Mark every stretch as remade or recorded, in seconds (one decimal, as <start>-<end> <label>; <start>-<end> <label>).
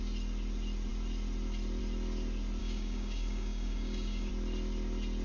0.0-2.6 recorded; 2.6-4.3 remade; 4.3-5.2 recorded